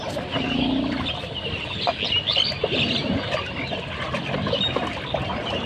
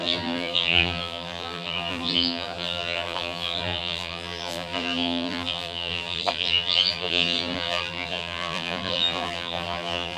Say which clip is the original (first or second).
first